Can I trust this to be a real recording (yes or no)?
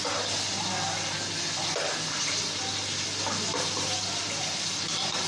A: yes